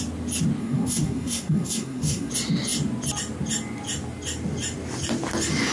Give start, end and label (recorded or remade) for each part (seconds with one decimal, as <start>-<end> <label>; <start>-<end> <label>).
0.0-0.6 recorded; 0.6-2.3 remade; 2.3-5.7 recorded

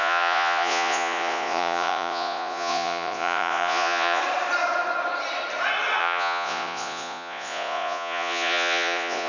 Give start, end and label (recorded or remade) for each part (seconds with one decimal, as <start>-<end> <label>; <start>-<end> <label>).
0.0-4.2 remade; 4.2-6.0 recorded; 6.0-9.3 remade

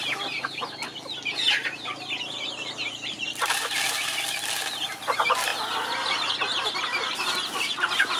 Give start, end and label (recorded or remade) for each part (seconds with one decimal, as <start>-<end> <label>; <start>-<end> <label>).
0.0-8.2 recorded

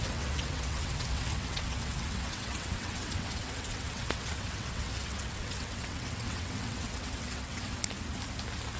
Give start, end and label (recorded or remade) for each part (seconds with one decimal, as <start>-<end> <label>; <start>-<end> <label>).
0.0-7.8 remade; 7.8-8.8 recorded

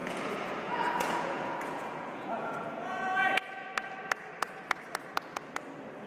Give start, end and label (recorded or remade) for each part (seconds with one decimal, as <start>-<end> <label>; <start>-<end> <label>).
0.0-3.7 remade; 3.7-6.1 recorded

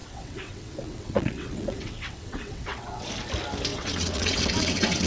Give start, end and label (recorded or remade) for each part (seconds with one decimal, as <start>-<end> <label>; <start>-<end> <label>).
0.0-3.1 remade; 3.1-3.7 recorded; 3.7-5.1 remade